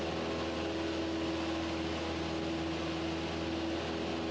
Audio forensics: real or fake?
real